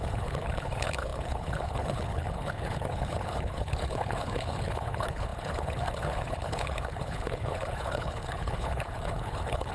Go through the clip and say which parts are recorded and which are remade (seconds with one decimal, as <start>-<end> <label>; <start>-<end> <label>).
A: 0.0-9.7 remade